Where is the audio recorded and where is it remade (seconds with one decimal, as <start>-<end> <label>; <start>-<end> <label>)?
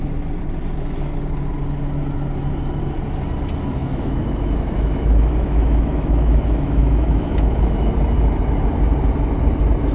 0.0-3.8 recorded; 3.8-7.9 remade; 7.9-9.9 recorded